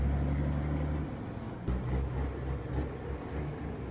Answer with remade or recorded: recorded